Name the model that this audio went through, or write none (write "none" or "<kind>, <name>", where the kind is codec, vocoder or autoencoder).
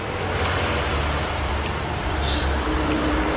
vocoder, BigVGAN v2